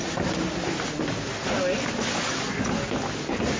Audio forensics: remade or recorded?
recorded